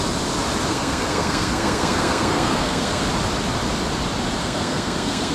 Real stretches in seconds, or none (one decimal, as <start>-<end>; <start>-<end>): 0.0-0.7; 3.0-4.4